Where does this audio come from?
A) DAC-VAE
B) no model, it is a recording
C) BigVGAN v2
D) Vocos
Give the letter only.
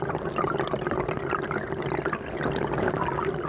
B